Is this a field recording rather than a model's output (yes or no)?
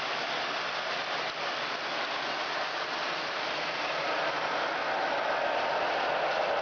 yes